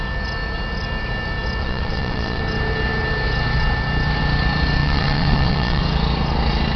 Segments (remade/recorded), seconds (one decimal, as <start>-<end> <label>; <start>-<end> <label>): 0.0-1.6 recorded; 1.6-2.4 remade; 2.4-4.8 recorded; 4.8-5.8 remade; 5.8-6.8 recorded